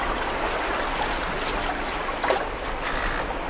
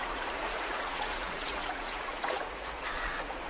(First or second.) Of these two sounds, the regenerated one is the second